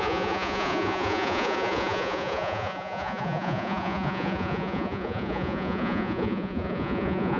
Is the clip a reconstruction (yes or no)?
yes